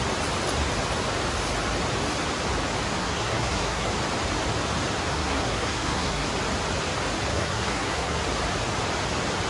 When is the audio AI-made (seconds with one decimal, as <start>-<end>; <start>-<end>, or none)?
3.0-3.9; 5.1-6.3; 7.3-8.2